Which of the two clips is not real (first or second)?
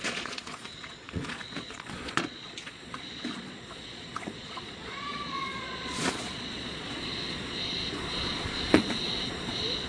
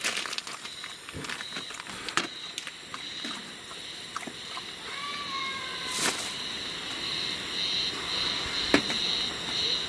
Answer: first